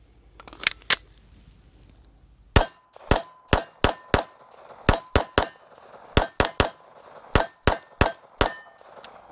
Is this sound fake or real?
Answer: real